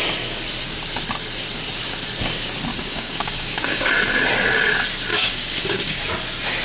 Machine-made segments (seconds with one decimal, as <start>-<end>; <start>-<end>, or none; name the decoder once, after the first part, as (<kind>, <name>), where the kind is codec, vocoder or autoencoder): 2.7-3.9 (codec, DAC); 5.1-6.0